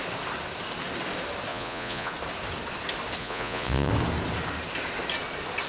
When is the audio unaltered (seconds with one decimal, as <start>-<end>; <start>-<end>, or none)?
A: 0.0-1.5; 2.1-3.2; 3.9-5.7

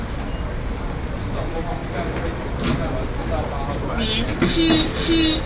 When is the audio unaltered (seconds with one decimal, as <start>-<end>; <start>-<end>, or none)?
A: 0.0-5.5

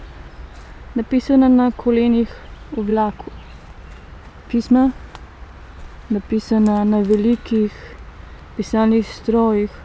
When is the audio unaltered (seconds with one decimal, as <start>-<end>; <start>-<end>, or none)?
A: 0.0-9.8

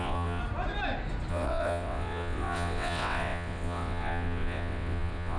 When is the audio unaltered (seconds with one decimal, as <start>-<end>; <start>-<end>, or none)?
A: 0.4-1.3

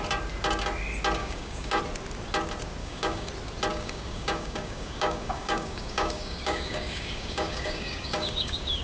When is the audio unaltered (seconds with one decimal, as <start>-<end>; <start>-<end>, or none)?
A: 0.0-1.2; 1.8-2.8; 3.3-3.7

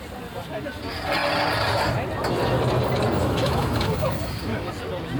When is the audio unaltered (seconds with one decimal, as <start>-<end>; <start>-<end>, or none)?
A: 0.0-3.2; 4.7-5.2

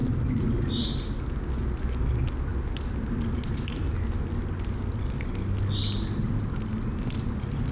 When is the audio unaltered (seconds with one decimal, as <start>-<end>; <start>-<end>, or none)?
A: 0.0-7.7